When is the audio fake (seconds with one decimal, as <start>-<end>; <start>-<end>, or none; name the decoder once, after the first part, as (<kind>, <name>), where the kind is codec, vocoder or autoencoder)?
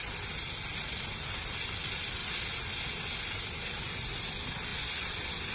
0.0-2.2 (vocoder, BigVGAN v2); 3.4-5.5